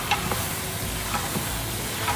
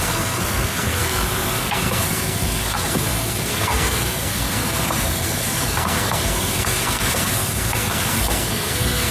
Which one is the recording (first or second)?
first